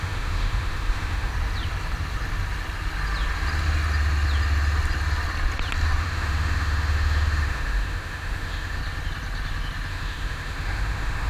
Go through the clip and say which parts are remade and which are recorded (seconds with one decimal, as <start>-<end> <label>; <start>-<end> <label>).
0.0-1.3 remade; 1.3-6.0 recorded; 6.0-8.8 remade; 8.8-9.9 recorded; 9.9-11.3 remade